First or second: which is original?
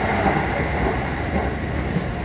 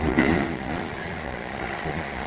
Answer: first